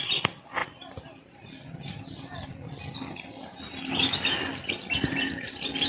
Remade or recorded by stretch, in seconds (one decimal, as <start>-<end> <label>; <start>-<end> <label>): 0.0-5.9 recorded